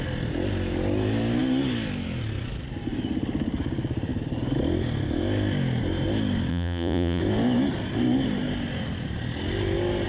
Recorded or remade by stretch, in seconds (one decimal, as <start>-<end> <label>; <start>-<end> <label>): 0.0-6.5 recorded; 6.5-7.2 remade; 7.2-10.1 recorded